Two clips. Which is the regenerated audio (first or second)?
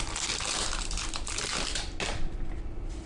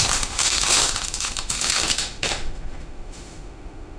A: second